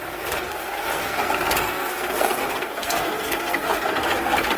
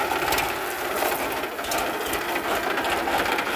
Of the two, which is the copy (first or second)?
first